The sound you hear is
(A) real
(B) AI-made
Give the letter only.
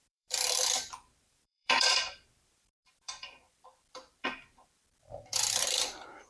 B